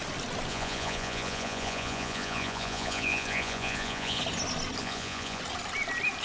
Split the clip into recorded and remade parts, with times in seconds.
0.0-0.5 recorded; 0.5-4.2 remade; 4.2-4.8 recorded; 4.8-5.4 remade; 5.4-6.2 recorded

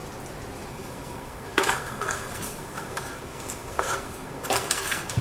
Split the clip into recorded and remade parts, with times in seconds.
0.0-0.7 recorded; 0.7-5.2 remade

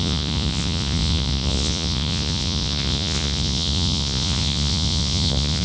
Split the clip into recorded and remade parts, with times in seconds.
0.0-5.6 remade